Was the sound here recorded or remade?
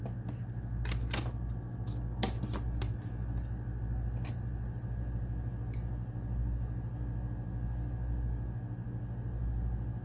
recorded